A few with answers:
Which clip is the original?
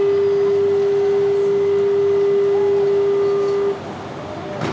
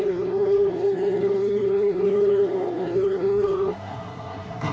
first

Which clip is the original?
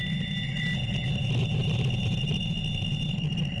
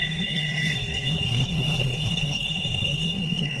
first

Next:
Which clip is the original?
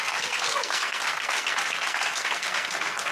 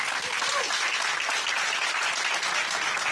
second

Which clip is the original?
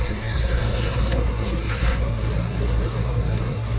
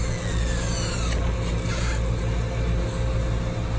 second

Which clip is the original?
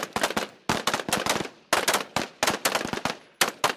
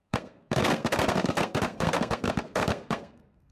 first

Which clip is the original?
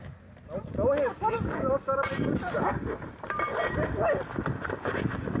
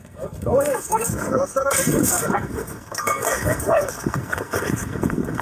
first